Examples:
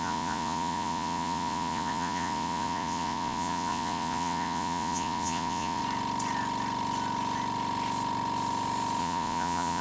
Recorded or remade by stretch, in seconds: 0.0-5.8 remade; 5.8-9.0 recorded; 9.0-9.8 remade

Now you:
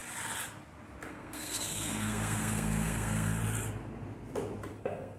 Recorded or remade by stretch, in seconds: 0.0-1.1 recorded; 1.1-3.4 remade; 3.4-4.7 recorded; 4.7-5.2 remade

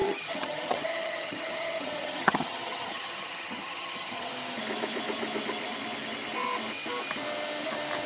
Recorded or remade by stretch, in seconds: 0.0-4.3 remade; 4.3-8.1 recorded

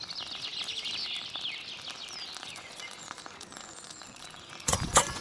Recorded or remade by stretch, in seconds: 0.0-2.4 recorded; 2.4-5.2 remade

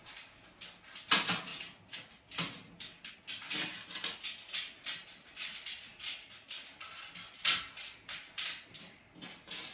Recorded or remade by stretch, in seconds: 0.0-9.7 recorded

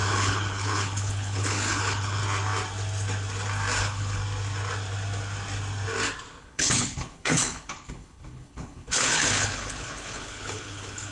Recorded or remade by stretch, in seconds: 0.0-2.2 remade; 2.2-3.8 recorded; 3.8-4.2 remade; 4.2-6.4 recorded; 6.4-11.1 remade

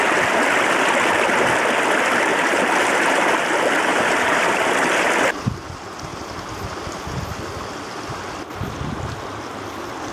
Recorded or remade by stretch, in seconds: 0.0-2.3 recorded; 2.3-3.3 remade; 3.3-3.9 recorded; 3.9-5.5 remade; 5.5-6.1 recorded; 6.1-6.6 remade; 6.6-10.1 recorded

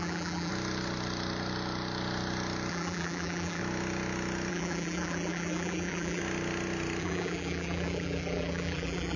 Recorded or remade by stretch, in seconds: 0.0-0.5 remade; 0.5-2.7 recorded; 2.7-3.6 remade; 3.6-4.5 recorded; 4.5-6.2 remade; 6.2-7.0 recorded; 7.0-9.2 remade